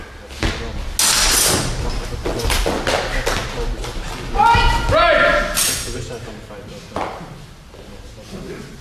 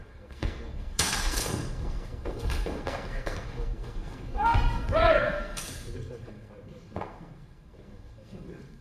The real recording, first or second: first